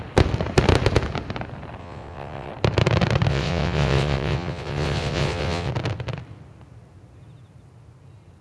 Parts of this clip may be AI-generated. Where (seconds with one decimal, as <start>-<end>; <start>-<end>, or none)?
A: 1.8-2.5; 3.3-5.7